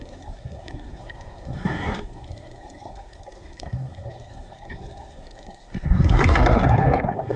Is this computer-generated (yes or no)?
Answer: yes